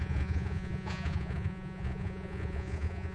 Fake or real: fake